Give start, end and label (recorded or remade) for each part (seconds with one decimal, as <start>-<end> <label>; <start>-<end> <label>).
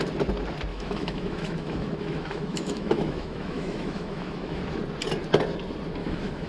0.0-0.7 recorded; 0.7-4.6 remade; 4.6-6.0 recorded; 6.0-6.5 remade